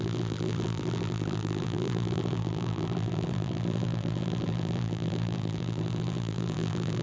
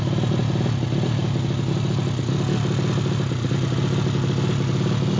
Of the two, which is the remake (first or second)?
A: first